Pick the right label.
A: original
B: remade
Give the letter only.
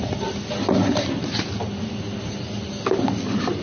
A